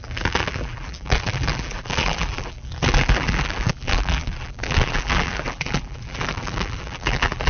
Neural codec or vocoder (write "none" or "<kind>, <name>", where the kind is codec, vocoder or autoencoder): vocoder, BigVGAN v2